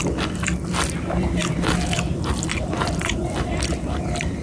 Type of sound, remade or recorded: remade